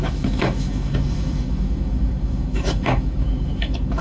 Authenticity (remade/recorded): remade